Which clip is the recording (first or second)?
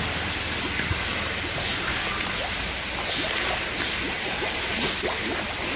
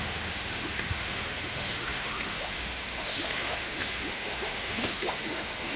first